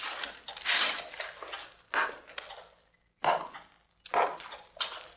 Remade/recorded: recorded